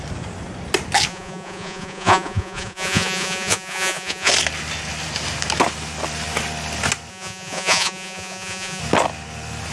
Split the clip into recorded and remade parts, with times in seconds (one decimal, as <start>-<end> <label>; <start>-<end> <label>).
0.0-1.1 recorded; 1.1-4.3 remade; 4.3-7.1 recorded; 7.1-8.8 remade; 8.8-9.7 recorded